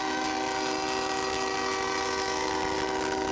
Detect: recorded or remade recorded